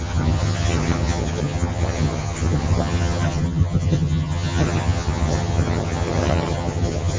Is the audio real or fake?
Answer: fake